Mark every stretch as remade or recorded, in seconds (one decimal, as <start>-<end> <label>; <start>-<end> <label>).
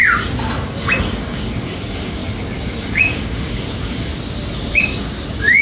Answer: 0.0-1.0 recorded; 1.0-2.2 remade; 2.2-2.8 recorded; 2.8-4.1 remade; 4.1-4.7 recorded; 4.7-5.6 remade